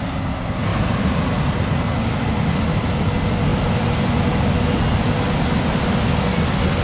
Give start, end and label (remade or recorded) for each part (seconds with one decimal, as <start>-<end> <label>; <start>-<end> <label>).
0.0-6.8 recorded